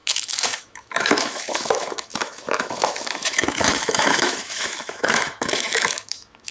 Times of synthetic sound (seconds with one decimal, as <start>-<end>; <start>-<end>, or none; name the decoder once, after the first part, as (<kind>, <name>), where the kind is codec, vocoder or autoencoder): 0.0-6.5 (autoencoder, DAC-VAE)